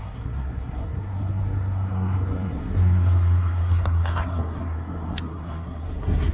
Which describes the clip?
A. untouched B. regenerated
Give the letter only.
B